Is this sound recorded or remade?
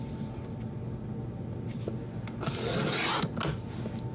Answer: recorded